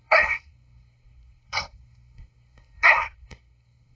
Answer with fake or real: fake